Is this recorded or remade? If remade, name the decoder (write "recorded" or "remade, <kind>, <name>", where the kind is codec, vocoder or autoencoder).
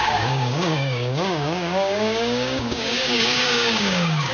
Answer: remade, codec, DAC